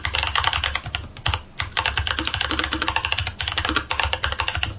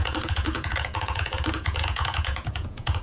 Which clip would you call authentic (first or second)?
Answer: first